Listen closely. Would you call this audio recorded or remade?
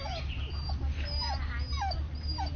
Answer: recorded